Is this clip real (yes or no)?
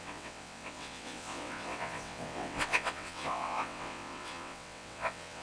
no